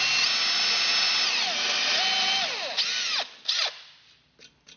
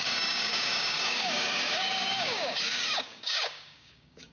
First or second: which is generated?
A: second